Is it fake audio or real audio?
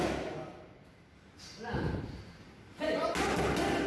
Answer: real